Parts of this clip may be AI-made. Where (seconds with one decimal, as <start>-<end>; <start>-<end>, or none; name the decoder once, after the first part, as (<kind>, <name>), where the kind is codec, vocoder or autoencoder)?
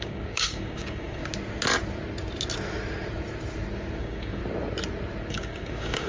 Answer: 0.0-1.2 (codec, DAC); 4.0-4.4; 5.3-6.1